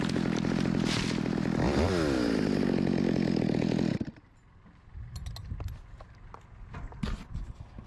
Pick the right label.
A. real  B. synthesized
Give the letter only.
A